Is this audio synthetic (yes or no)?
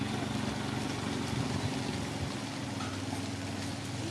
no